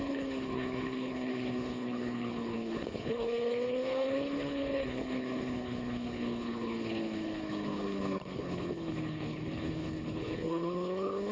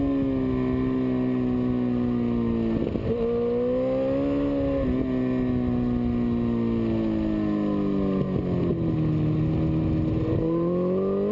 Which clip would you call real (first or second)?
second